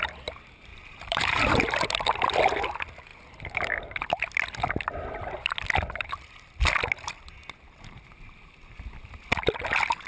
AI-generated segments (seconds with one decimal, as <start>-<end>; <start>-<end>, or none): 0.7-1.4

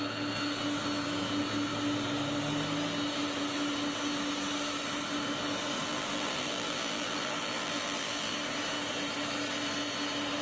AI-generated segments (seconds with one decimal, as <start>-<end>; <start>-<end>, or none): 5.9-8.3

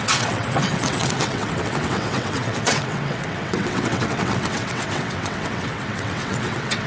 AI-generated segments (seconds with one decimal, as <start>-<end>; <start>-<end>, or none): 0.0-6.9